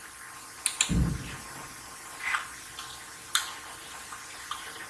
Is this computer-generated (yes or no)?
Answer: no